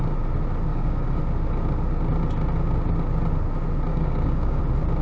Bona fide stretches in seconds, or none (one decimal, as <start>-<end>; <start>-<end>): 0.0-0.7; 1.2-3.9; 4.6-5.0